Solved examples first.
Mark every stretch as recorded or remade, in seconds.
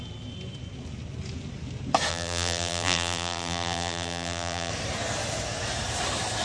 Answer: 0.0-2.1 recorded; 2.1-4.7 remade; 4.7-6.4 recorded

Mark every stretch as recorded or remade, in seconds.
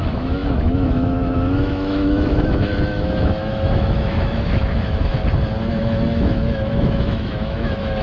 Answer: 0.0-5.2 remade; 5.2-5.7 recorded; 5.7-8.0 remade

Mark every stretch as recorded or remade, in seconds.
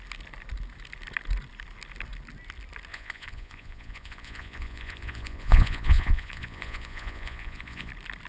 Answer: 0.0-2.9 recorded; 2.9-7.9 remade; 7.9-8.3 recorded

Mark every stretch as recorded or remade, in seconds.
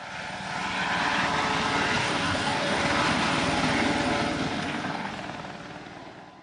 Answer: 0.0-2.0 recorded; 2.0-2.8 remade; 2.8-4.5 recorded; 4.5-5.1 remade; 5.1-6.4 recorded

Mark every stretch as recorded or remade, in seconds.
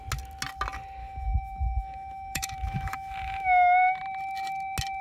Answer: 0.0-1.0 recorded; 1.0-4.0 remade; 4.0-5.0 recorded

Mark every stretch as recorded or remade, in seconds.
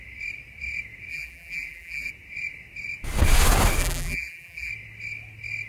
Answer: 0.0-1.1 recorded; 1.1-2.1 remade; 2.1-3.8 recorded; 3.8-4.7 remade; 4.7-5.7 recorded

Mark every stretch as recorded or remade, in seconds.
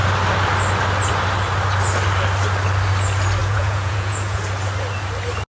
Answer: 0.0-3.4 recorded; 3.4-4.4 remade; 4.4-5.5 recorded